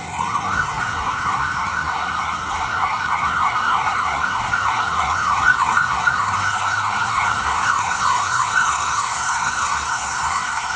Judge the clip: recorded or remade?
remade